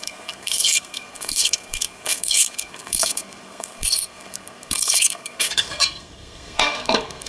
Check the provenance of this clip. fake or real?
fake